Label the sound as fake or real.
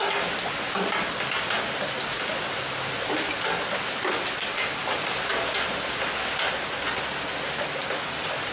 real